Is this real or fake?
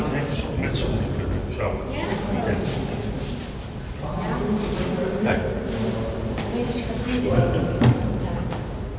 real